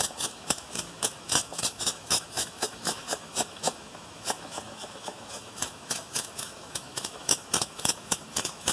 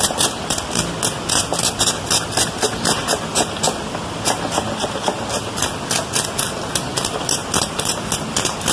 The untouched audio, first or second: second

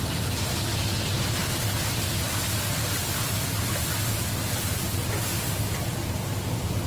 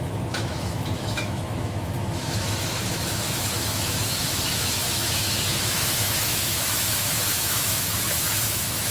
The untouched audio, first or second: first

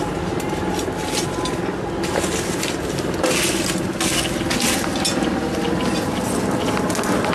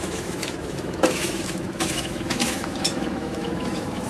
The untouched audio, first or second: first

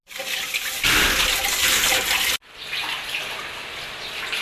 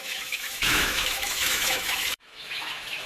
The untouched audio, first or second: first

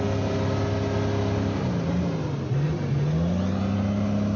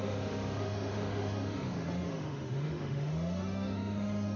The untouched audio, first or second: first